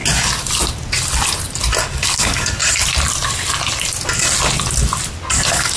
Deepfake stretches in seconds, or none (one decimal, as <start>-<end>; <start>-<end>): 1.8-2.6; 5.3-5.8